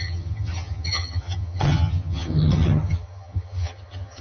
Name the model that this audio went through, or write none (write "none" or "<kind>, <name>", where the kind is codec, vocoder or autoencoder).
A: vocoder, HiFi-GAN